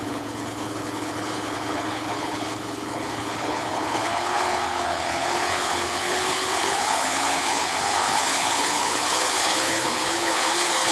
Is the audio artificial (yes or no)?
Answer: yes